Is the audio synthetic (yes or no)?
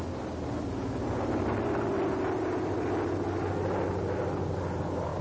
no